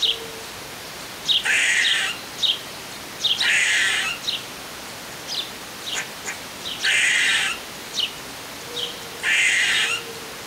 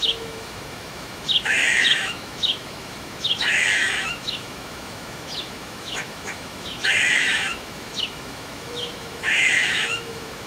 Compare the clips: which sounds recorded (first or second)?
first